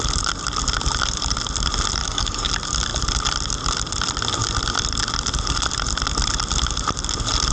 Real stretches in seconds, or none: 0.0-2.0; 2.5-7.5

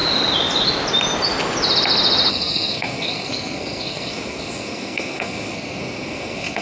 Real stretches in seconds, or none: 0.0-2.3

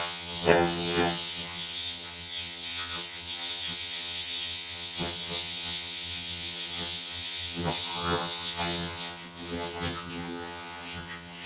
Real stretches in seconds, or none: none

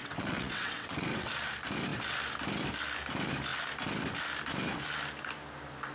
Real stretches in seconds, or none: 1.3-5.9

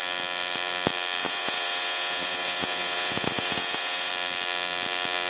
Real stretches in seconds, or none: 0.0-1.2; 4.1-5.3

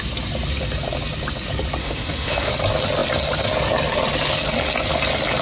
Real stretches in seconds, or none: 0.0-1.8; 2.5-5.4

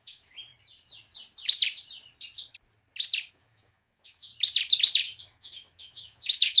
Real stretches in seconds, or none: 0.5-3.3; 4.3-5.2

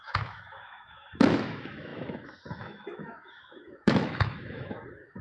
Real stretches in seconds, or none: none